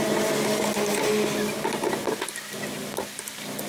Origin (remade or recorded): recorded